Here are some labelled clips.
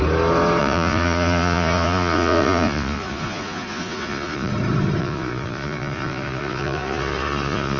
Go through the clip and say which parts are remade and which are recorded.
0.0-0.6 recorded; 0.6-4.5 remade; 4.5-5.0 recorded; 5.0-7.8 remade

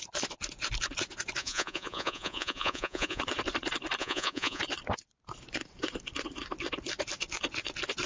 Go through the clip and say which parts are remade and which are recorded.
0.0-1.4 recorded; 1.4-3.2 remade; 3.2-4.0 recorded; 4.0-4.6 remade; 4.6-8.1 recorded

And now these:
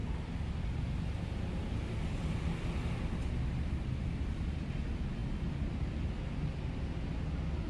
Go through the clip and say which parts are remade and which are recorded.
0.0-7.7 recorded